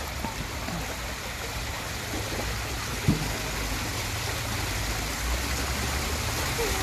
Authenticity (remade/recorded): recorded